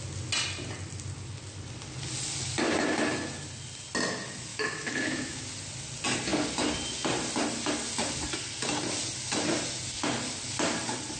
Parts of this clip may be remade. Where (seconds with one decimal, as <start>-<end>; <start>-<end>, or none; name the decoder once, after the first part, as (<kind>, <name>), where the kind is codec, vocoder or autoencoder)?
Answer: 4.5-5.4 (autoencoder, DAC-VAE)

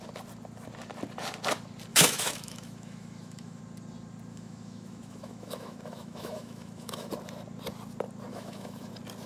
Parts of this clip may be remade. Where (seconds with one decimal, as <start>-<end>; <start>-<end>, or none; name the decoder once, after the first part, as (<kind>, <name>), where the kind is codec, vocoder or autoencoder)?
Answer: 1.9-3.6 (autoencoder, DAC-VAE); 4.3-7.1; 8.3-8.9

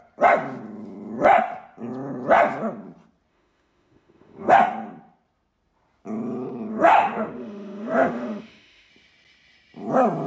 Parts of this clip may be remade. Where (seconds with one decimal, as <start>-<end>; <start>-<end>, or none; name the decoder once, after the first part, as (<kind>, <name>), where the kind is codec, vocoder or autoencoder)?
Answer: 3.3-4.6 (autoencoder, DAC-VAE); 6.7-8.9